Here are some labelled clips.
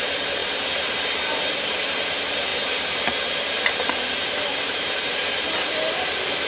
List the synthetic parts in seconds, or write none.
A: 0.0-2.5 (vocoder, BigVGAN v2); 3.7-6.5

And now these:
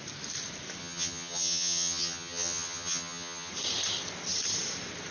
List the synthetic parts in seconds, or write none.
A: 0.8-3.5 (vocoder, HiFi-GAN)

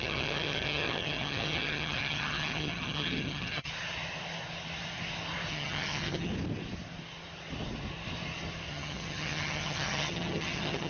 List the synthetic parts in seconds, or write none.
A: 0.0-3.7 (vocoder, HiFi-GAN); 5.5-6.3; 8.7-10.9

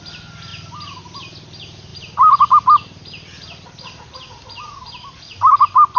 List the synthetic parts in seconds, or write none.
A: none

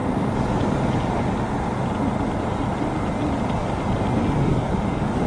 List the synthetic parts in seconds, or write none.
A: 4.5-5.3 (codec, DAC)

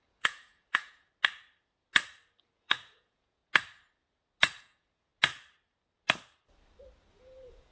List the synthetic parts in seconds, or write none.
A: 0.0-1.1 (vocoder, Vocos); 2.4-3.4; 4.6-5.1; 7.1-7.7